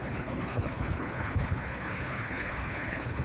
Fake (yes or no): yes